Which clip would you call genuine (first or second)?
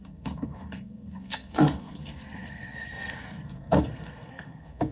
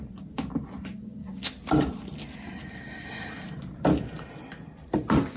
second